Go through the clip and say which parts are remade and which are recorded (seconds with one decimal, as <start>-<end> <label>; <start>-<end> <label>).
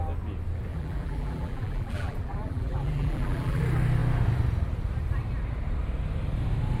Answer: 0.0-0.7 recorded; 0.7-3.6 remade; 3.6-6.8 recorded